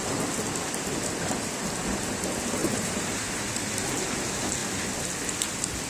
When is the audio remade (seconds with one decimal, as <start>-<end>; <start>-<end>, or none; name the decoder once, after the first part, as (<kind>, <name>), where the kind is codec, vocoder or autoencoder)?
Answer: 2.6-3.5 (vocoder, BigVGAN v2)

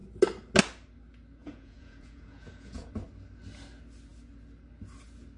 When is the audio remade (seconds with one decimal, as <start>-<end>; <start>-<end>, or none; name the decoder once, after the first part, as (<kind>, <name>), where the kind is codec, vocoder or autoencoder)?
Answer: 1.4-2.9 (vocoder, Vocos)

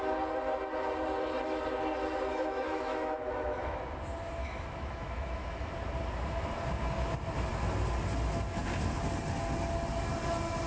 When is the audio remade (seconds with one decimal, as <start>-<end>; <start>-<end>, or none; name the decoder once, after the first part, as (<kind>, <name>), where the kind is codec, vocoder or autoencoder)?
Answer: 2.3-3.8 (autoencoder, DAC-VAE); 4.4-5.7

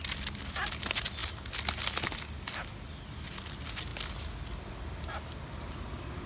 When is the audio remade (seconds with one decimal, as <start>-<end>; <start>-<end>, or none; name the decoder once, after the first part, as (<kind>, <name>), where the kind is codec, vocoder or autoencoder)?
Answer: none

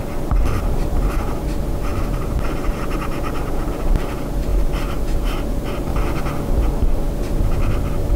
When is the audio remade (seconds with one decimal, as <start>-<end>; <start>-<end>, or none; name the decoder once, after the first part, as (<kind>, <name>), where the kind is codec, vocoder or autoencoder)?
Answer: 0.0-5.9 (vocoder, BigVGAN v2); 6.5-8.2

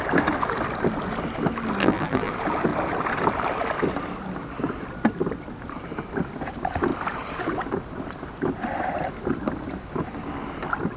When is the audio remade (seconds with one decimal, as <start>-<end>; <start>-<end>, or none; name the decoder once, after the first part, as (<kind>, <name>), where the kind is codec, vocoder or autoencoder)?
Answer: 1.8-2.3 (vocoder, BigVGAN v2)

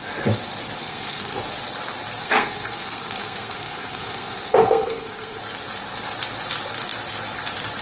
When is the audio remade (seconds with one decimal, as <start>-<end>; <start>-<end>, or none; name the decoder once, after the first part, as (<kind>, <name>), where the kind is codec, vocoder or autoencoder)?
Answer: 0.8-1.4 (codec, SNAC); 2.2-5.4